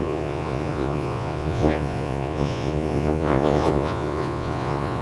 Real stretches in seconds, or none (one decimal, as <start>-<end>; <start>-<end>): none